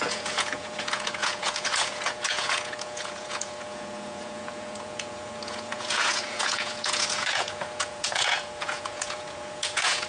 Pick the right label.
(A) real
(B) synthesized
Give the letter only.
B